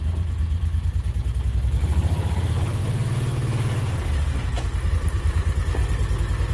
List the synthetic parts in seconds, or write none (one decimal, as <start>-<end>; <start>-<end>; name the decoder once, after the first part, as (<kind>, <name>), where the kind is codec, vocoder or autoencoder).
0.0-0.6 (vocoder, BigVGAN v2); 1.4-2.8; 4.9-5.8